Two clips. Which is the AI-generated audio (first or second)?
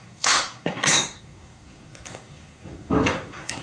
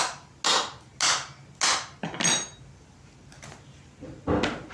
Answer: first